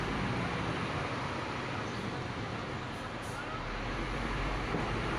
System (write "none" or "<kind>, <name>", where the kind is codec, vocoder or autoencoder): none